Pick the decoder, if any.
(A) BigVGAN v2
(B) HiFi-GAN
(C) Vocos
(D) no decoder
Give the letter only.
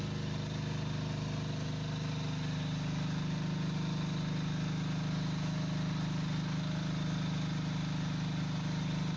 D